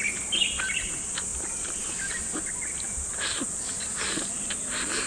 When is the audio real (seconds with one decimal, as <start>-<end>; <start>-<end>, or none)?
0.0-5.1